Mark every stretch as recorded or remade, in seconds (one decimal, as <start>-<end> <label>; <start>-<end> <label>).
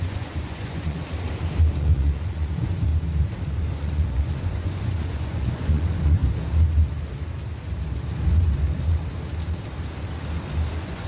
0.0-1.0 remade; 1.0-1.7 recorded; 1.7-2.9 remade; 2.9-3.7 recorded; 3.7-6.2 remade; 6.2-10.7 recorded; 10.7-11.1 remade